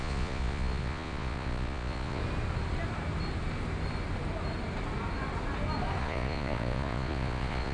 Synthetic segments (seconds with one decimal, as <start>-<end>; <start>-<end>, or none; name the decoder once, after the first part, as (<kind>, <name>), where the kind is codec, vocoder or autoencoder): 0.0-2.2 (vocoder, Vocos); 6.0-7.7